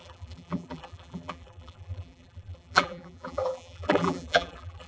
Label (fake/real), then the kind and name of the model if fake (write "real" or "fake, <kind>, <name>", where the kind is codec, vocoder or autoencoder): fake, vocoder, BigVGAN v2